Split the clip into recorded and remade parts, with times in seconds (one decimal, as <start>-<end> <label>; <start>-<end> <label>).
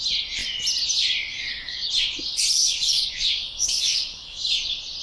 0.0-1.3 recorded; 1.3-1.9 remade; 1.9-2.6 recorded; 2.6-4.5 remade; 4.5-5.0 recorded